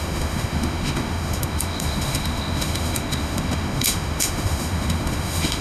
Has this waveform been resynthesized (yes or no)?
yes